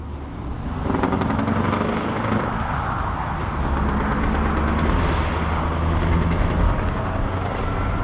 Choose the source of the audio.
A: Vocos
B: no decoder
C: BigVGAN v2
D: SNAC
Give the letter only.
B